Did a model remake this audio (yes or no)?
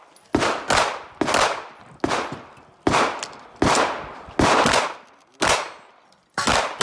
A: no